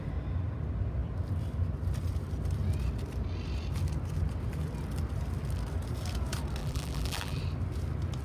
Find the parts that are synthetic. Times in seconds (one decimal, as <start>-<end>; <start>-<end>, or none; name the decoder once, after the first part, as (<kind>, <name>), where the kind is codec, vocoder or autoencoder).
6.6-7.4 (vocoder, BigVGAN v2)